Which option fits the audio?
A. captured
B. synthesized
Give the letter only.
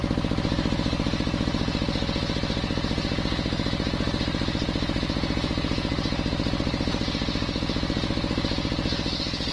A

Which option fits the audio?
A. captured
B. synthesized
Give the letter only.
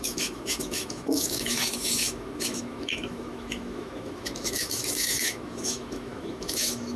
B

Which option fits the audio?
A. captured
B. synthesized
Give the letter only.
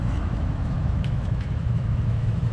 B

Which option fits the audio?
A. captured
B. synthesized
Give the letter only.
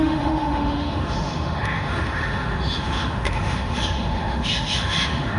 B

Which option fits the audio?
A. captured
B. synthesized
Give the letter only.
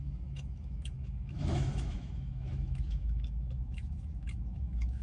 B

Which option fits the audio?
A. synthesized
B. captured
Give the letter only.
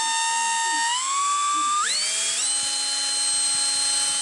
B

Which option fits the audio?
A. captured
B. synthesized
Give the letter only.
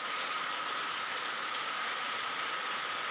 A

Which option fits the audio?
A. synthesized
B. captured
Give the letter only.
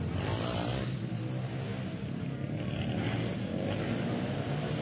B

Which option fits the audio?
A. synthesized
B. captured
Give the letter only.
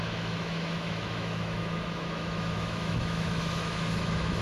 A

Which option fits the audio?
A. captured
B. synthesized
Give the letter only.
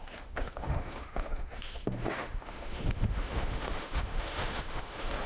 B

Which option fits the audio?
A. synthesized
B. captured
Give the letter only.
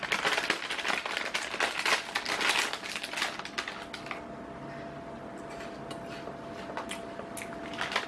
B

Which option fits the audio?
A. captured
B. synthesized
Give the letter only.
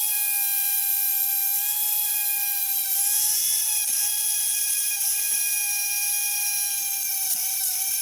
A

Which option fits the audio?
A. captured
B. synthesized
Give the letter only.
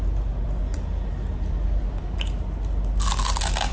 A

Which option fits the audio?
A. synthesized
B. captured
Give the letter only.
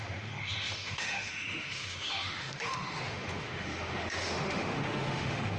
A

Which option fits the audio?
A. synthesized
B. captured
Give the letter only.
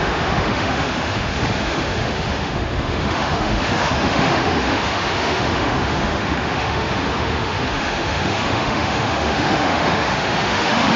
A